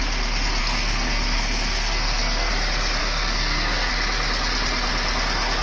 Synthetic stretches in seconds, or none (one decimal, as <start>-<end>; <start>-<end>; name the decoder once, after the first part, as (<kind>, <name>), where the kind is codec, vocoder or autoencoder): 0.6-2.5 (codec, SNAC); 3.0-3.9